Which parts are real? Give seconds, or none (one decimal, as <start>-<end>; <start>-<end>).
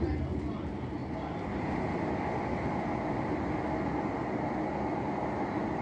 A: 0.0-1.0; 3.6-4.2